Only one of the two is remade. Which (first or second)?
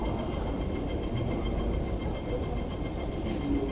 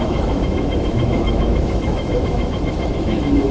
second